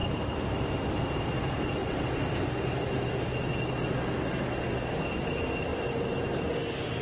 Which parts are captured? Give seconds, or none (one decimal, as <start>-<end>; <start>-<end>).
1.2-1.8; 2.4-5.7; 6.3-7.0